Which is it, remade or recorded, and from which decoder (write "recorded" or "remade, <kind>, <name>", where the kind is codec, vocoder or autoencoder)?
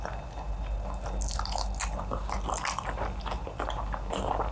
recorded